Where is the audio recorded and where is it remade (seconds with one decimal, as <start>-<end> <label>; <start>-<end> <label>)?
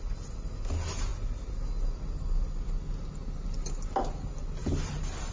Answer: 0.0-4.6 recorded; 4.6-5.3 remade